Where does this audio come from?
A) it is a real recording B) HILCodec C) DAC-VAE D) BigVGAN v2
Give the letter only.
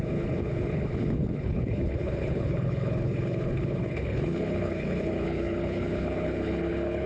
B